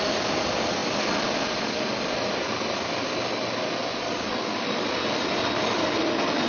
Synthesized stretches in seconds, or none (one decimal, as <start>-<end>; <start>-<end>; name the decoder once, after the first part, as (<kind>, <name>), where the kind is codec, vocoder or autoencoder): none